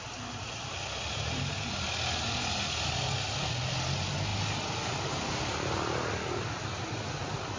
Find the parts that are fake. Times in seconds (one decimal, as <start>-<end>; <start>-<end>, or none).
none

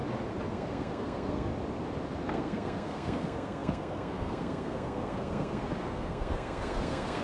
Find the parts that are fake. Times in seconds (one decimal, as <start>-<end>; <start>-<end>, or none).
0.5-1.5; 2.2-7.2

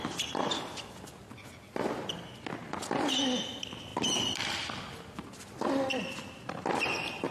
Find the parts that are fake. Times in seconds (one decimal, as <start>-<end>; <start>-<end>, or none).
none

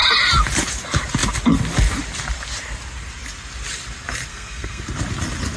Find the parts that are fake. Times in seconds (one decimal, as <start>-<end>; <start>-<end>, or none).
4.3-4.8

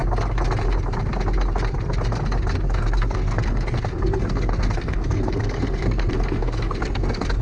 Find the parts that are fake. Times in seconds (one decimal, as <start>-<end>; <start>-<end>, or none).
2.8-7.4

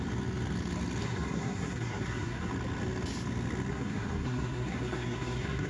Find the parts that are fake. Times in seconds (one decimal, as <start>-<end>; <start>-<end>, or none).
1.0-2.5; 3.7-5.7